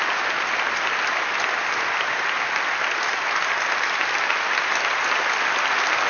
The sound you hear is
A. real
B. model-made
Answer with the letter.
A